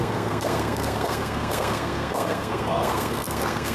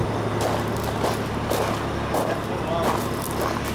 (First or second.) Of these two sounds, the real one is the second